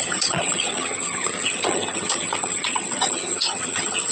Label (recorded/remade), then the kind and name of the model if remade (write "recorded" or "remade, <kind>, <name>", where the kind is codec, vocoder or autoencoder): remade, vocoder, HiFi-GAN